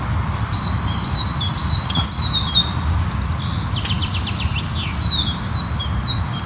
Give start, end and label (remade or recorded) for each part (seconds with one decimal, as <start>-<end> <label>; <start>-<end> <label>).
0.0-6.5 recorded